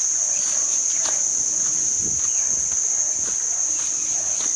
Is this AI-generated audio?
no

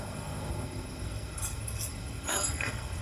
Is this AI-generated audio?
yes